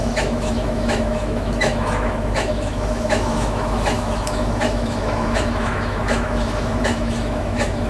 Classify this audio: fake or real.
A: fake